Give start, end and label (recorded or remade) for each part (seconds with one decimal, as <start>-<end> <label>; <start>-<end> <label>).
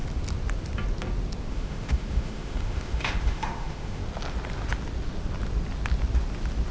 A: 0.0-1.5 recorded; 1.5-4.0 remade; 4.0-6.7 recorded